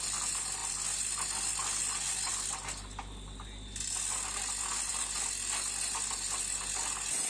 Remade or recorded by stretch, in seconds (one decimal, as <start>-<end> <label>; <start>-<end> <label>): 0.0-7.3 recorded